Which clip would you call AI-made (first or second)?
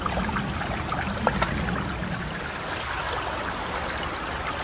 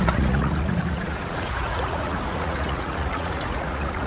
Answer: second